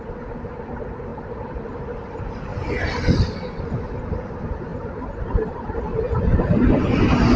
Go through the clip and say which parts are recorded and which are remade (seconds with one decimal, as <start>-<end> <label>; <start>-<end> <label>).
0.0-1.1 recorded; 1.1-1.6 remade; 1.6-4.7 recorded; 4.7-5.8 remade; 5.8-7.4 recorded